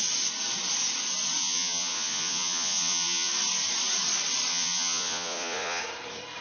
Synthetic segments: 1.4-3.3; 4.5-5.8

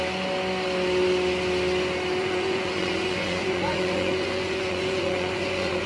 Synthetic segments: 2.2-5.9

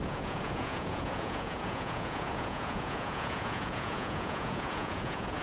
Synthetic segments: 0.0-5.4

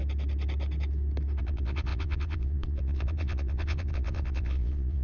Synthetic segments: 1.4-5.0